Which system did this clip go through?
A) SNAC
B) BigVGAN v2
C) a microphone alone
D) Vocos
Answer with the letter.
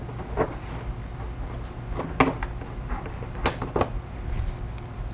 C